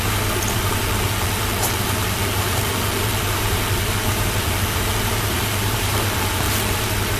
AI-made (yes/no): yes